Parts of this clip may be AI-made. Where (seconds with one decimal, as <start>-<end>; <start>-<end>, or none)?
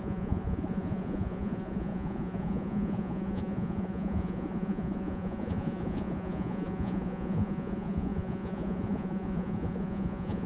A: 0.0-10.5